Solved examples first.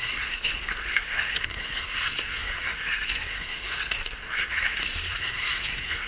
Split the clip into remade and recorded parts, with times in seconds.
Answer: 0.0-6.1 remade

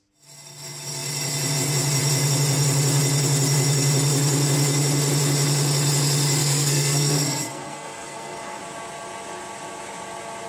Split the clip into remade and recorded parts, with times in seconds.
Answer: 0.0-6.4 recorded; 6.4-8.6 remade; 8.6-10.5 recorded

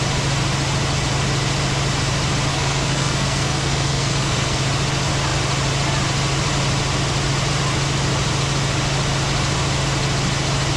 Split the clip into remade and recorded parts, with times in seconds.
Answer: 0.0-2.5 recorded; 2.5-4.6 remade; 4.6-10.8 recorded

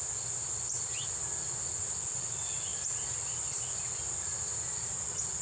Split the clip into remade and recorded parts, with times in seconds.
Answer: 0.0-5.4 recorded

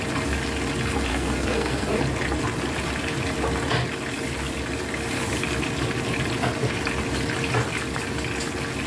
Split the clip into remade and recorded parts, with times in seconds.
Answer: 0.0-1.1 recorded; 1.1-2.0 remade; 2.0-8.9 recorded

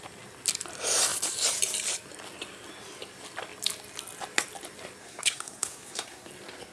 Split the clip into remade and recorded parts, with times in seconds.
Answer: 0.0-5.0 recorded; 5.0-6.3 remade; 6.3-6.7 recorded